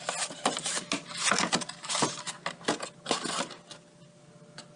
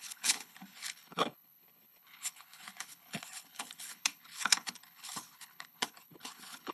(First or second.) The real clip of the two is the first